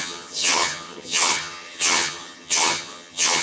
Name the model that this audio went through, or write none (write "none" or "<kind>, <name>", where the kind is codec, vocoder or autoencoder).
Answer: vocoder, HiFi-GAN